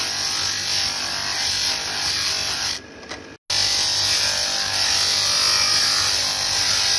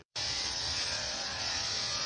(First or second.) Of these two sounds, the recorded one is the first